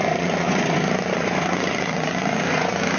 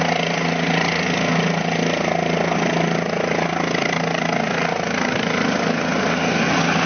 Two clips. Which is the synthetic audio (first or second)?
first